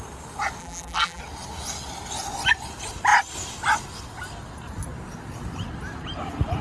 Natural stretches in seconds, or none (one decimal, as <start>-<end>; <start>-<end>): 0.0-0.6; 1.2-6.6